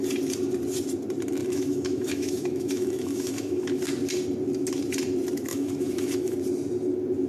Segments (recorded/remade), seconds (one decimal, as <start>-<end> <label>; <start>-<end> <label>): 0.0-1.4 recorded; 1.4-3.8 remade; 3.8-5.5 recorded; 5.5-6.4 remade; 6.4-7.3 recorded